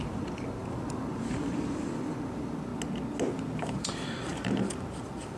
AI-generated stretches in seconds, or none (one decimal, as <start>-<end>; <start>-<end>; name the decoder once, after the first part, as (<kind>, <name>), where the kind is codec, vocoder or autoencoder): 0.0-2.7 (vocoder, BigVGAN v2); 3.9-4.3; 5.0-5.4